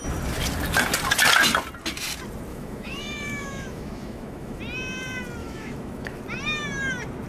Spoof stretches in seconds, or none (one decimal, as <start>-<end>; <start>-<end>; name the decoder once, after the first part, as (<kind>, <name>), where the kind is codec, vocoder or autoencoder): 2.5-4.6 (autoencoder, DAC-VAE); 5.4-6.2